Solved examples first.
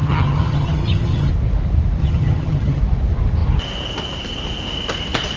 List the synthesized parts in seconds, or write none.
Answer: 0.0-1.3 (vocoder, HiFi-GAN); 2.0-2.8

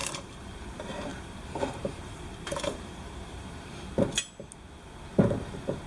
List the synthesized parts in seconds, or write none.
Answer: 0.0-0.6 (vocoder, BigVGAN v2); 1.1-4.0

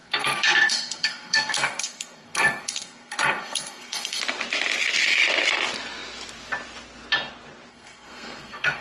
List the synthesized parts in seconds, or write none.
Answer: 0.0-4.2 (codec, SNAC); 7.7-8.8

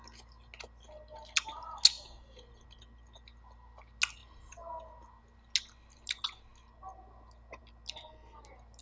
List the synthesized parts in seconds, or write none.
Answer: none

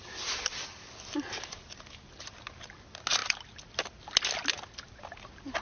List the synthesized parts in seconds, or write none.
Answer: none

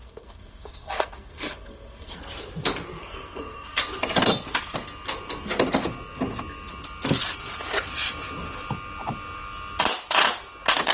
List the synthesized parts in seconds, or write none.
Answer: 0.0-2.2 (codec, SNAC); 3.0-3.8

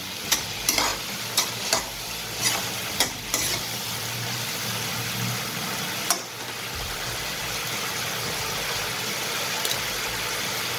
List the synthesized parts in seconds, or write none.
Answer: none

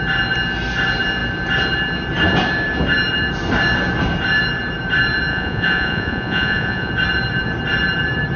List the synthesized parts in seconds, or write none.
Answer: 5.3-6.9 (vocoder, Vocos)